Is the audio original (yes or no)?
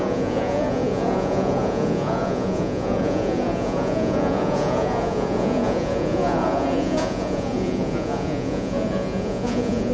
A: no